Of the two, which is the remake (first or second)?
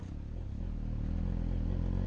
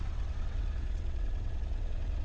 second